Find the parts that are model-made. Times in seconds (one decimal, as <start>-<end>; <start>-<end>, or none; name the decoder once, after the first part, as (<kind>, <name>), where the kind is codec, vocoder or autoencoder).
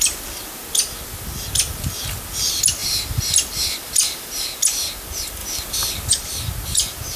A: none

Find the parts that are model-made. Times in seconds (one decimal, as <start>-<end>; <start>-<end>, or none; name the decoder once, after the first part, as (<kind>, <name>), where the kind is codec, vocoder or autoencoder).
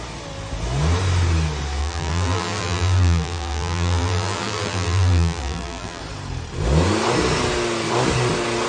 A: 1.8-6.0 (vocoder, BigVGAN v2)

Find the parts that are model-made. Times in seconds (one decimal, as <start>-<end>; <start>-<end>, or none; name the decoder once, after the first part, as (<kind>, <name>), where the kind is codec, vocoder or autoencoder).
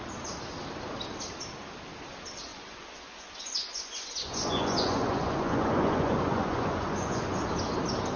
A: 2.5-7.4 (vocoder, Vocos)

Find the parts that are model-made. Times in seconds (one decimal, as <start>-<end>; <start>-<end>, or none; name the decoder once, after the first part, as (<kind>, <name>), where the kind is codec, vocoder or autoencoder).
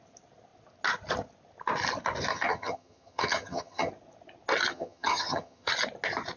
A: 2.3-3.9 (vocoder, HiFi-GAN); 4.7-5.7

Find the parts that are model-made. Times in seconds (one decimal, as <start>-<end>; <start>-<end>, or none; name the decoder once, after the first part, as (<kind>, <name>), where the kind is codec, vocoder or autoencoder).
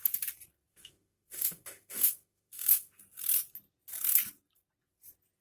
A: 0.7-3.0 (autoencoder, DAC-VAE)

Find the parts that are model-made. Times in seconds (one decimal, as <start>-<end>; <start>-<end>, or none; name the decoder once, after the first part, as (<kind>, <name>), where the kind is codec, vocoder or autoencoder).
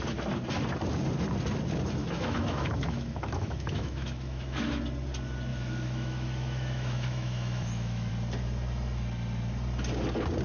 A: 2.0-4.8 (autoencoder, DAC-VAE); 5.5-8.1